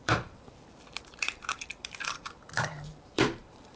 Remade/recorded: remade